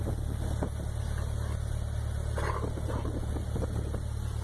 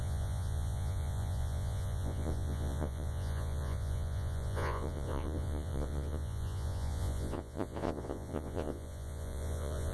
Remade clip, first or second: second